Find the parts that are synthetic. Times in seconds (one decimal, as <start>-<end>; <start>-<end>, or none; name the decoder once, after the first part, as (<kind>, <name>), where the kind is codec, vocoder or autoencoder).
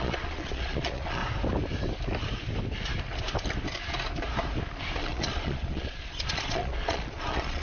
0.0-1.2 (vocoder, Vocos); 5.0-7.6